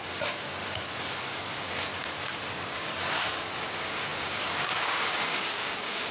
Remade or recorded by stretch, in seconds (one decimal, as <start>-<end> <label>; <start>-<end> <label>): 0.0-0.6 remade; 0.6-1.2 recorded; 1.2-1.9 remade; 1.9-2.5 recorded; 2.5-6.1 remade